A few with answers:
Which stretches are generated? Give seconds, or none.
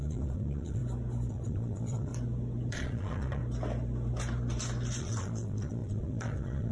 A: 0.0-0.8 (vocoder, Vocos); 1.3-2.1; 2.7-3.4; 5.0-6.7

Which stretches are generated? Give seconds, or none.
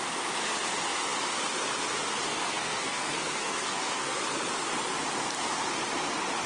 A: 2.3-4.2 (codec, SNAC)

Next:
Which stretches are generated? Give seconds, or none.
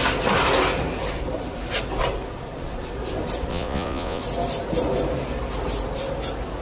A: 3.5-4.2 (vocoder, Vocos)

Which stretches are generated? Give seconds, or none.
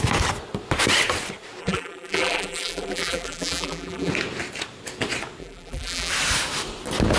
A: 1.6-4.1 (vocoder, BigVGAN v2); 5.4-6.1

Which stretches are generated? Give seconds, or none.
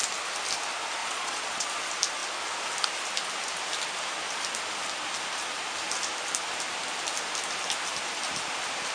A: 1.0-1.7 (vocoder, Vocos)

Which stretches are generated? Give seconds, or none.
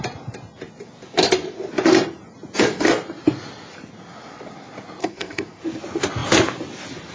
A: 5.0-5.6 (codec, SNAC)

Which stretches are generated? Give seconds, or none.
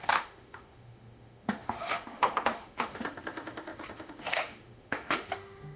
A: 0.0-5.8 (autoencoder, DAC-VAE)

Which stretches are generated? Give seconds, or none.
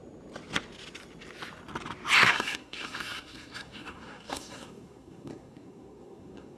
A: 2.2-6.6 (codec, SNAC)